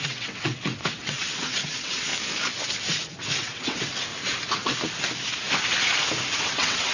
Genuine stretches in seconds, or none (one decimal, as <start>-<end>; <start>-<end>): 2.1-3.2; 4.1-6.3